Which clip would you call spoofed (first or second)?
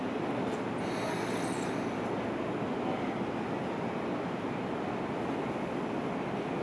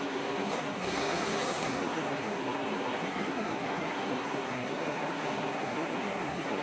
second